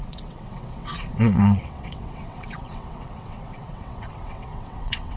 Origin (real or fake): fake